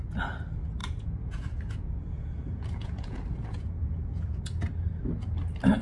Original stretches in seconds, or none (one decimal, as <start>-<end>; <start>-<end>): 0.0-0.8; 4.3-5.8